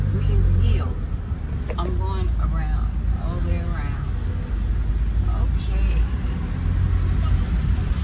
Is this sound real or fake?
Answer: real